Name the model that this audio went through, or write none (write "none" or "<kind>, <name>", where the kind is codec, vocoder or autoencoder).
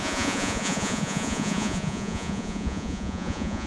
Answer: vocoder, Vocos